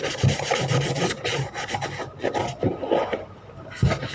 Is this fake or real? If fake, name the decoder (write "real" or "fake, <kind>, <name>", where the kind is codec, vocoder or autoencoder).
real